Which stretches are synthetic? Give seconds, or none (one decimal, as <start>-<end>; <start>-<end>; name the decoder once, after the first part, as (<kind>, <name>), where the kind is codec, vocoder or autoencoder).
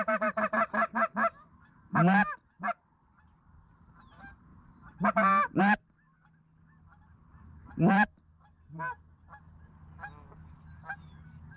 none